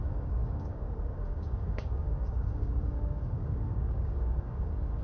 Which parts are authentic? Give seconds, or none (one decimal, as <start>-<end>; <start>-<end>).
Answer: none